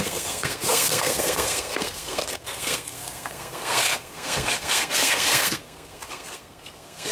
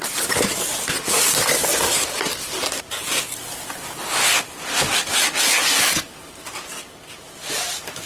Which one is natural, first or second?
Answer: second